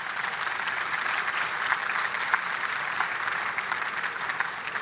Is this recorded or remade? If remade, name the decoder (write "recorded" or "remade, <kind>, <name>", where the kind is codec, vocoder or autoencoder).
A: recorded